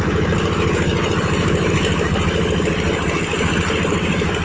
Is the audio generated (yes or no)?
no